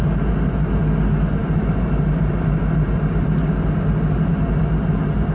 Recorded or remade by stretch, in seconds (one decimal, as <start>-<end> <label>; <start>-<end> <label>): 0.0-5.3 recorded